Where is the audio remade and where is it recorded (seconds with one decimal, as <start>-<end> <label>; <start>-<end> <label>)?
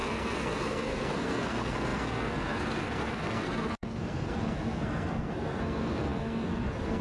0.0-7.0 remade